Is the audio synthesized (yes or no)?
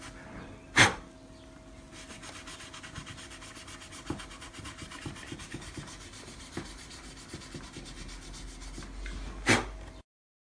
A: no